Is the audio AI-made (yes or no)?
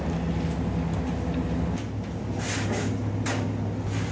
no